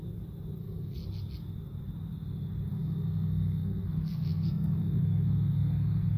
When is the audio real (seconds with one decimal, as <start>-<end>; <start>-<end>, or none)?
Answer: 0.0-0.6; 1.0-2.7